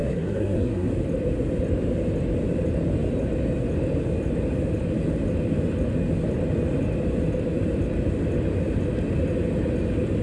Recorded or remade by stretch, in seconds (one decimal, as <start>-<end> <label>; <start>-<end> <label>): 0.0-0.9 remade; 0.9-10.2 recorded